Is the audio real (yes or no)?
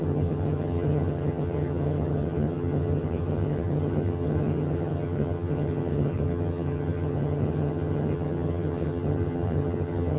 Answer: no